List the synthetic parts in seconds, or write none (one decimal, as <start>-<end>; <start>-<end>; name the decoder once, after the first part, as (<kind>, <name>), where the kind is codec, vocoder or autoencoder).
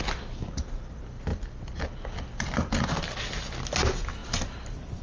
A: none